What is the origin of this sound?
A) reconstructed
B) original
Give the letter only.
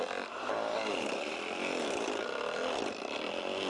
B